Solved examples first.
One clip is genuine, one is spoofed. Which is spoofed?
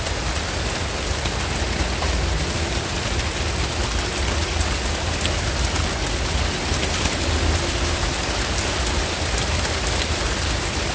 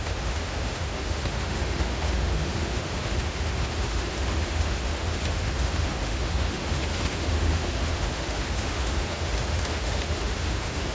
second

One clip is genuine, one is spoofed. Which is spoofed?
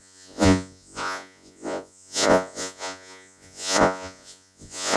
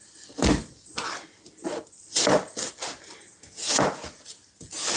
first